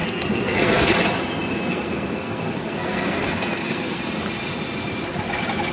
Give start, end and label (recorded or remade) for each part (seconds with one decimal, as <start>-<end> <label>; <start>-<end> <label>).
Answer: 0.0-0.9 remade; 0.9-1.7 recorded; 1.7-4.0 remade; 4.0-5.7 recorded